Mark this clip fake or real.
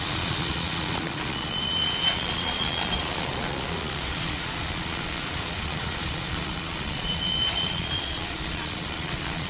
fake